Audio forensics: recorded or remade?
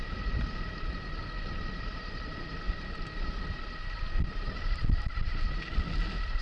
recorded